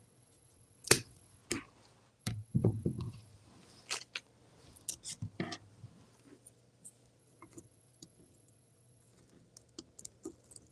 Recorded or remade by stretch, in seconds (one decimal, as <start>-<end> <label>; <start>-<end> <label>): 0.0-1.4 remade; 1.4-2.2 recorded; 2.2-3.3 remade; 3.3-7.2 recorded; 7.2-9.1 remade; 9.1-10.7 recorded